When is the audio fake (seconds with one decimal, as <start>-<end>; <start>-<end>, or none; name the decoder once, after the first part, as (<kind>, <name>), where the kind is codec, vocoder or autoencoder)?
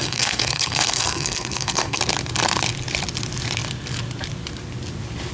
0.0-2.0 (codec, SNAC)